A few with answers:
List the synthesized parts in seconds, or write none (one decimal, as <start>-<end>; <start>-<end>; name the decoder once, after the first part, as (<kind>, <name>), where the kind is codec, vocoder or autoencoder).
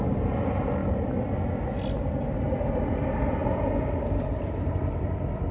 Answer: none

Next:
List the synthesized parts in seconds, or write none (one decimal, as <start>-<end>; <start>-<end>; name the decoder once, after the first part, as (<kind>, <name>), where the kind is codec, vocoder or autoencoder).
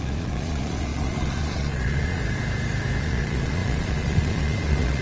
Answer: 0.0-2.2 (vocoder, Vocos); 3.0-5.0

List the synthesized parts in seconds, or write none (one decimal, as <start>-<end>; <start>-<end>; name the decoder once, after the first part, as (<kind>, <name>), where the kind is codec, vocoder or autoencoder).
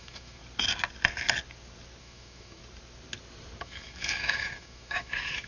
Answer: 0.0-0.4 (autoencoder, DAC-VAE); 2.0-2.6; 3.6-5.5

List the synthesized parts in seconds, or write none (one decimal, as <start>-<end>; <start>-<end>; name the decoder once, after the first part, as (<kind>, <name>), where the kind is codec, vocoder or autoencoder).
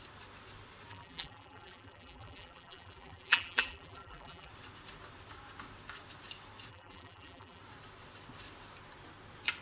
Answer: 0.9-4.5 (vocoder, BigVGAN v2); 6.7-7.6